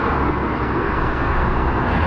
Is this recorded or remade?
remade